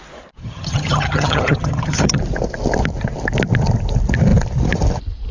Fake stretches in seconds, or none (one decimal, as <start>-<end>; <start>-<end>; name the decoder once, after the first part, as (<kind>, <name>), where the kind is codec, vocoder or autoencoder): 0.4-2.2 (vocoder, HiFi-GAN)